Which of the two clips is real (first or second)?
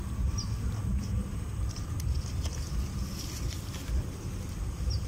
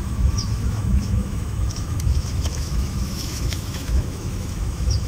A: first